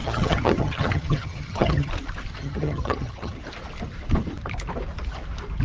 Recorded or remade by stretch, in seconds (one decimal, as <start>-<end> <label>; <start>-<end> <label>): 0.0-1.9 remade; 1.9-2.4 recorded; 2.4-3.4 remade; 3.4-5.6 recorded